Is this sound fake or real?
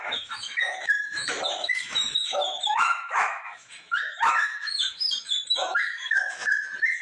fake